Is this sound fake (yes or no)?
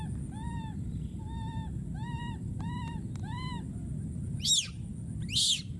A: no